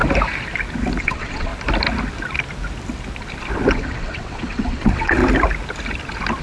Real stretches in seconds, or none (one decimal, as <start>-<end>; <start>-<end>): 0.0-1.0; 1.5-3.7; 5.2-6.4